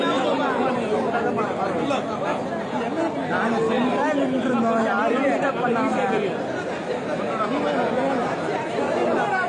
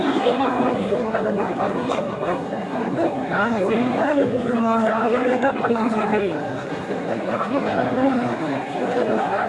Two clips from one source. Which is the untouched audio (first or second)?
first